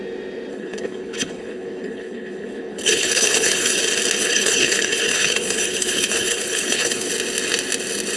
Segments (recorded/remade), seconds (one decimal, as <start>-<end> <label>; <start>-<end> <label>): 0.0-0.5 recorded; 0.5-3.8 remade; 3.8-4.2 recorded; 4.2-7.1 remade; 7.1-8.2 recorded